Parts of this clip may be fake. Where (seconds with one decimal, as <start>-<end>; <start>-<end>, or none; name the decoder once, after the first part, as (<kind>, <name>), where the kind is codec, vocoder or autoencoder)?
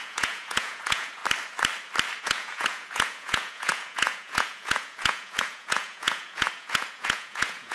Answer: 0.0-1.2 (vocoder, Vocos); 2.2-7.7